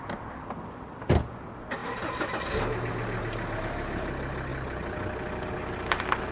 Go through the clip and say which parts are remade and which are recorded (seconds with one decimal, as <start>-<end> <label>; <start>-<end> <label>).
0.0-6.3 recorded